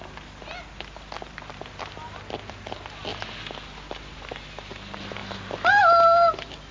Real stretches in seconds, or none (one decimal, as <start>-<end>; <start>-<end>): 0.0-6.7